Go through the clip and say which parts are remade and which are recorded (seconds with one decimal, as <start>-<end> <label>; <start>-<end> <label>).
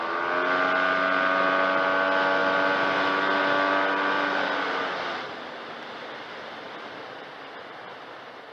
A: 0.0-8.5 recorded